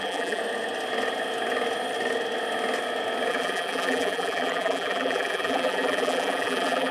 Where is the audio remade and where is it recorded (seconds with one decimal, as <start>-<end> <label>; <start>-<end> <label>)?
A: 0.0-0.4 remade; 0.4-3.3 recorded; 3.3-6.9 remade